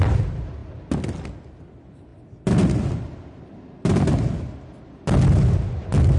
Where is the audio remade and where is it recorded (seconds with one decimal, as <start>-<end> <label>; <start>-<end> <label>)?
0.0-6.2 recorded